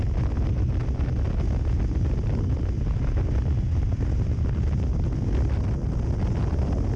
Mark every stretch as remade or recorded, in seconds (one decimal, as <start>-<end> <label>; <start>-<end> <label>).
0.0-7.0 recorded